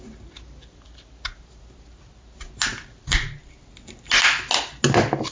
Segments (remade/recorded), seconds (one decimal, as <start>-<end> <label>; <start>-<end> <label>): 0.0-5.3 recorded